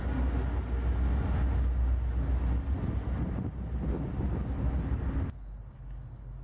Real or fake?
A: real